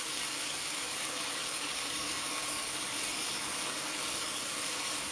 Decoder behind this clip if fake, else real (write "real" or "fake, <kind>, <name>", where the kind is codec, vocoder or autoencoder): fake, codec, DAC